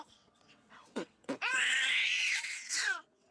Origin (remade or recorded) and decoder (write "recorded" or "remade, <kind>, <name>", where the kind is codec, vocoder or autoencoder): remade, vocoder, WaveNeXt